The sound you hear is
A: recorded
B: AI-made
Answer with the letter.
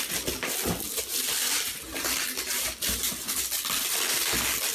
A